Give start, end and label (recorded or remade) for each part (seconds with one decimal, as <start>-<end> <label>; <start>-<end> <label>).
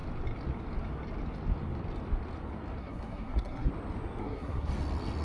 0.0-2.8 recorded; 2.8-3.7 remade; 3.7-4.2 recorded; 4.2-4.7 remade; 4.7-5.2 recorded